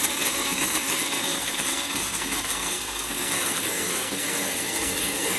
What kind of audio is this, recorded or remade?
remade